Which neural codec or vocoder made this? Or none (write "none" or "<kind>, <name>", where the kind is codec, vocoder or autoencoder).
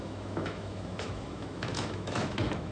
autoencoder, DAC-VAE